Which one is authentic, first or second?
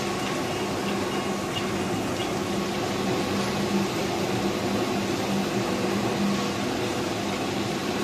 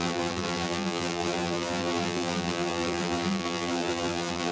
first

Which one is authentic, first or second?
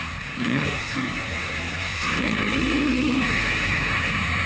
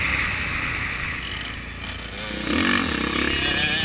second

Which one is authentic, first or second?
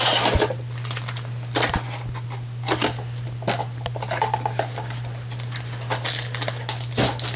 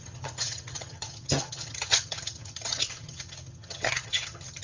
first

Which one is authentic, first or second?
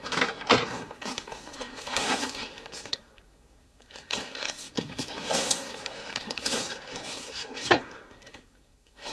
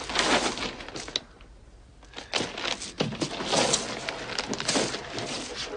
second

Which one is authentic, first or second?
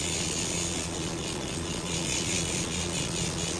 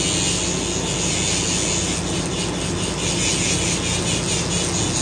second